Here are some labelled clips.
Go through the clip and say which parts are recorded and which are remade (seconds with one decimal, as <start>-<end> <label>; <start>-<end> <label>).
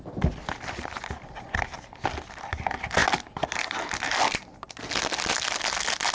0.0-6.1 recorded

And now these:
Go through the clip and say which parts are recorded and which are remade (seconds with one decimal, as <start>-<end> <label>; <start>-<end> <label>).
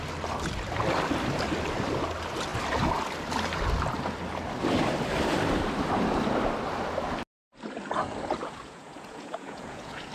0.0-8.4 recorded; 8.4-10.1 remade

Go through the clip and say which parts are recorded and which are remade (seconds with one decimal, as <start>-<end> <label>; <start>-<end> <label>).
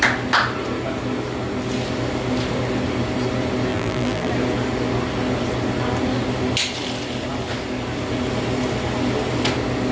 0.0-3.7 recorded; 3.7-4.3 remade; 4.3-9.9 recorded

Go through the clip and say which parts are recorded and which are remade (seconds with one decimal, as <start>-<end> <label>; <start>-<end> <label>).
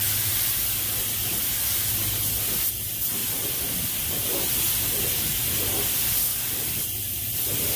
0.0-3.2 recorded; 3.2-4.6 remade; 4.6-6.3 recorded; 6.3-7.8 remade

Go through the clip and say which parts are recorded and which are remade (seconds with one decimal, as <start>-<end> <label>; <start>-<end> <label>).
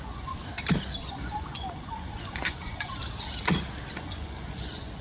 0.0-0.5 remade; 0.5-1.0 recorded; 1.0-3.0 remade; 3.0-3.9 recorded; 3.9-5.0 remade